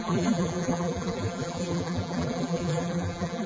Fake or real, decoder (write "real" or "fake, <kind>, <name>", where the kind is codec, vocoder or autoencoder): fake, vocoder, BigVGAN v2